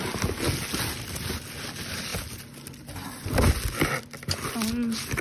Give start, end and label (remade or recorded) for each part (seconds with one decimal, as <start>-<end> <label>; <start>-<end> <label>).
0.0-5.2 recorded